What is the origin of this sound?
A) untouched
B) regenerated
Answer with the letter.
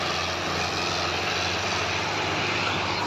A